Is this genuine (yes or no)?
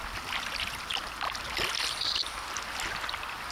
yes